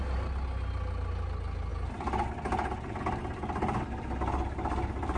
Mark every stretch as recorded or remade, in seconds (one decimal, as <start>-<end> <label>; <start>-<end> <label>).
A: 0.0-5.2 recorded